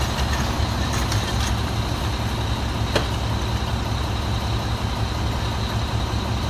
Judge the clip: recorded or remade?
recorded